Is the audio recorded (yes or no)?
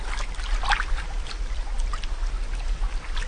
yes